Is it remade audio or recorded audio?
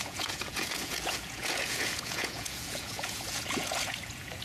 remade